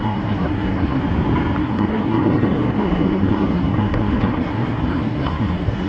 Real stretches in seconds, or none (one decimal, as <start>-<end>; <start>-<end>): 1.0-1.6